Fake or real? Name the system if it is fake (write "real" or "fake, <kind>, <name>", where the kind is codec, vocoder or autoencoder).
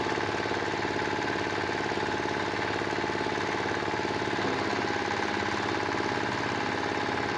real